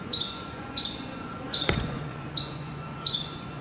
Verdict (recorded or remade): remade